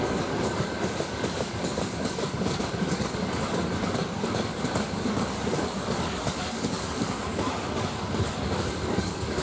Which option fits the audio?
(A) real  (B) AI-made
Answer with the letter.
B